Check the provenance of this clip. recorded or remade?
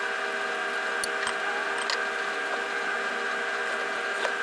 recorded